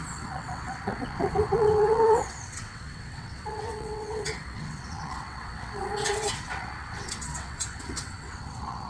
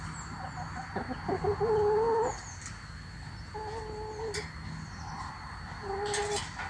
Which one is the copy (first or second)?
first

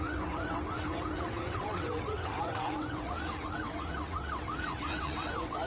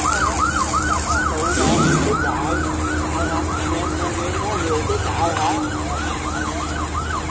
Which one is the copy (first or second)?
first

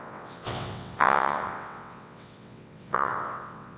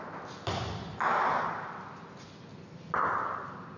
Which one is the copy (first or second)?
first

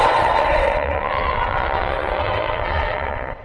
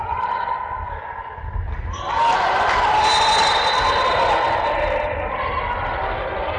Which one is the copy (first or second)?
first